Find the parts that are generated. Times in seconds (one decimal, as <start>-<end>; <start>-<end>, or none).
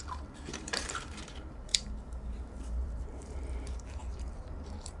0.0-5.0